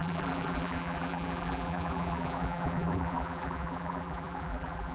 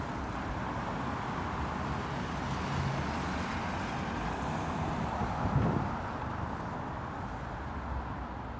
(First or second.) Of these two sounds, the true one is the second